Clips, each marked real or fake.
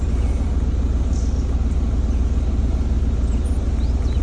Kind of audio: real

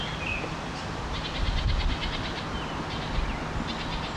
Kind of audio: real